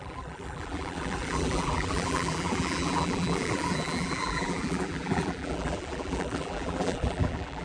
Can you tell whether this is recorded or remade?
remade